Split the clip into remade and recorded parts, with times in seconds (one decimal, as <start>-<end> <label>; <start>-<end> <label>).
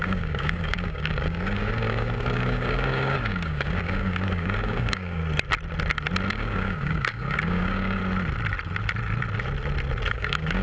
0.0-5.2 remade; 5.2-6.3 recorded; 6.3-8.0 remade; 8.0-10.1 recorded; 10.1-10.6 remade